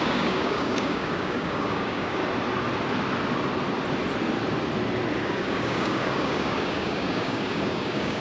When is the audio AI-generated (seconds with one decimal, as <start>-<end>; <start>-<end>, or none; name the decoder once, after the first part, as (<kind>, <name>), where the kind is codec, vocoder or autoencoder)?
0.0-2.2 (codec, DAC); 5.2-8.2